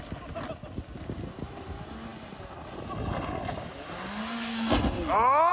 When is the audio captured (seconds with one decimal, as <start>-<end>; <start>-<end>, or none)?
0.0-5.5